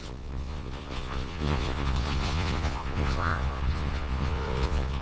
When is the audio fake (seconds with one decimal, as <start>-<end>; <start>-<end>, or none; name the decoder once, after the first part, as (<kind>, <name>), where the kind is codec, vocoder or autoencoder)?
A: 0.0-5.0 (vocoder, Vocos)